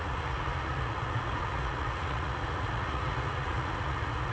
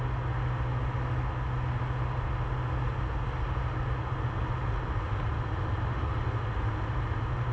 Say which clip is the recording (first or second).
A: second